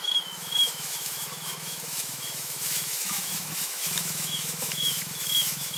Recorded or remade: remade